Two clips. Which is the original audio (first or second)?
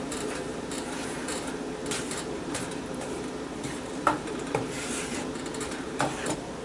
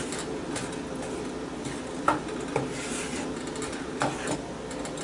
second